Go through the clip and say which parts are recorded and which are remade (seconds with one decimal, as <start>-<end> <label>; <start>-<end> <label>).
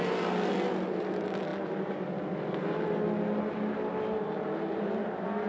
0.0-5.5 recorded